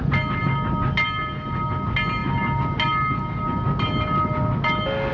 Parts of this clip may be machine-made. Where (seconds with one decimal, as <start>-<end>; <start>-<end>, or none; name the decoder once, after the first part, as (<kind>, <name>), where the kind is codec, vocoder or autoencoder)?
none

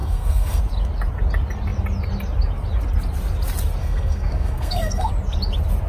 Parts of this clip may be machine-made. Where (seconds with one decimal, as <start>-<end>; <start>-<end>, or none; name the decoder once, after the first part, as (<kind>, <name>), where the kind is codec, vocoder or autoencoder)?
0.0-0.6 (codec, SNAC); 3.8-5.1

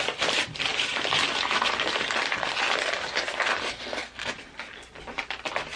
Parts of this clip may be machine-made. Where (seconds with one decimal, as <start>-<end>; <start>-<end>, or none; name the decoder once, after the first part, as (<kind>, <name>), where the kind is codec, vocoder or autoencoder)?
3.7-4.3 (codec, SNAC)